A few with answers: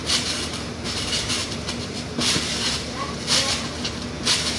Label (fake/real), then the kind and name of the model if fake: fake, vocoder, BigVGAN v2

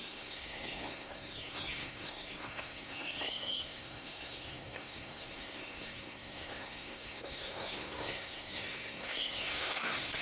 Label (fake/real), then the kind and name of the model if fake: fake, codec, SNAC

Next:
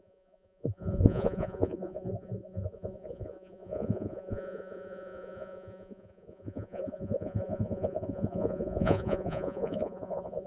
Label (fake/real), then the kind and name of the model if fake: fake, vocoder, Vocos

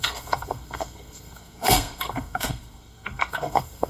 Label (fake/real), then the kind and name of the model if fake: fake, codec, SNAC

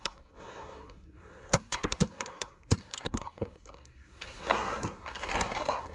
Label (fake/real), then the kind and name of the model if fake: fake, codec, SNAC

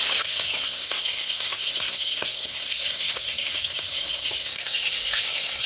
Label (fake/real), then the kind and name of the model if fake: fake, codec, SNAC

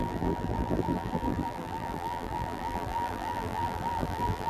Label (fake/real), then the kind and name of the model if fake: fake, vocoder, BigVGAN v2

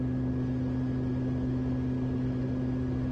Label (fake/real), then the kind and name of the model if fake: real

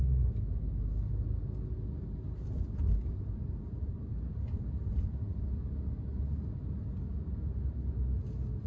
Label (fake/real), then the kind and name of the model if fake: real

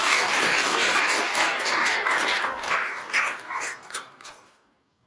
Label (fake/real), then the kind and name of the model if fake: fake, codec, DAC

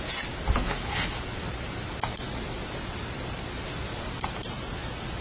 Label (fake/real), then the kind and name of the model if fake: real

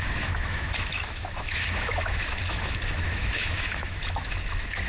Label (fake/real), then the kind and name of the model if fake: fake, autoencoder, DAC-VAE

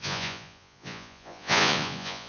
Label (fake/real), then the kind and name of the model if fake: fake, vocoder, Vocos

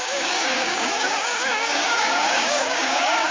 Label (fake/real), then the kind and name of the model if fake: fake, codec, DAC